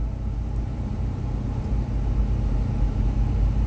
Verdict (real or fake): real